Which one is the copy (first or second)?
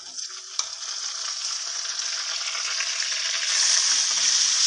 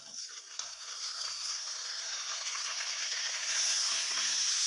second